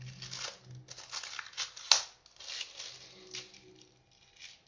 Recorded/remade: recorded